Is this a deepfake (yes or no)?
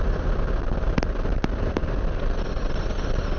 yes